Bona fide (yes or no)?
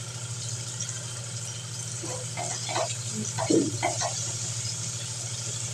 yes